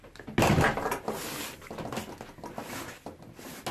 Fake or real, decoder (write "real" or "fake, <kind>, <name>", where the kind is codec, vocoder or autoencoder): real